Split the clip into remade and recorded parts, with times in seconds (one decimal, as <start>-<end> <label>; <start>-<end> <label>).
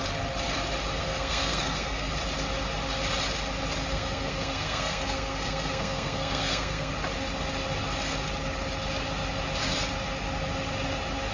0.0-1.0 recorded; 1.0-2.1 remade; 2.1-3.9 recorded; 3.9-6.9 remade; 6.9-11.3 recorded